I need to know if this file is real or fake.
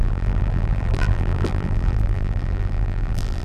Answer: fake